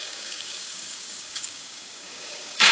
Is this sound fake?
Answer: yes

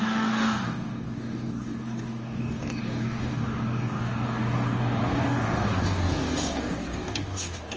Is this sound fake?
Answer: yes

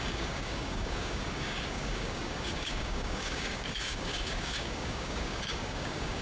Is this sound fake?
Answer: yes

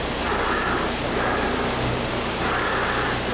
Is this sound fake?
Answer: yes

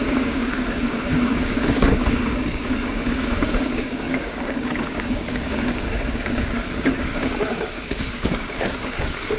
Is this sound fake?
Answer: yes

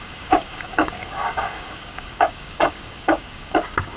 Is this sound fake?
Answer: yes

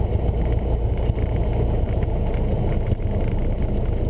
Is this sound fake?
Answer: no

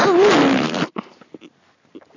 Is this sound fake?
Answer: no